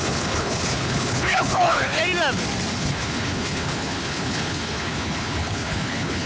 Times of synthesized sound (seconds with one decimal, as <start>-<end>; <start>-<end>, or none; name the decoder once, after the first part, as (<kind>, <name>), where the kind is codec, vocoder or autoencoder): 0.0-2.0 (codec, HILCodec); 2.7-6.3